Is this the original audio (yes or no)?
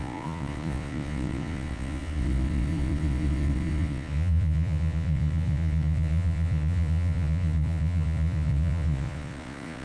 no